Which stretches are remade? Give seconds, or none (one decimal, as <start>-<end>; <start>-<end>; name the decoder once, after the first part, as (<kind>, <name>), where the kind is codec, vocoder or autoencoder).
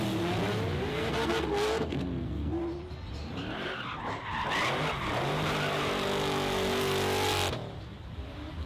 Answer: 0.9-2.6 (codec, SNAC)